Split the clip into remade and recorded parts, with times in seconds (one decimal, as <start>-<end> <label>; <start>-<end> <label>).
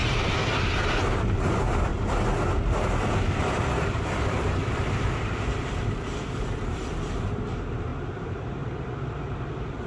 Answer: 0.0-0.4 remade; 0.4-1.1 recorded; 1.1-1.9 remade; 1.9-2.5 recorded; 2.5-9.9 remade